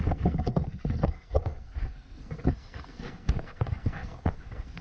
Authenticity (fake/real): fake